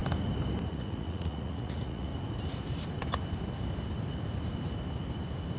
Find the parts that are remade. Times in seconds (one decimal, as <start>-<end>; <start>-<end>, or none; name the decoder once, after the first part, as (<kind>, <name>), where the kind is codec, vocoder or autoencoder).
0.7-2.1 (vocoder, Vocos)